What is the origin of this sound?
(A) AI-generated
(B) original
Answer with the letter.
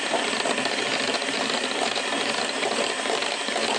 A